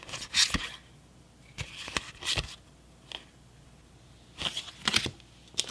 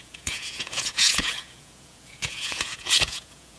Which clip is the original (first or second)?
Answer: first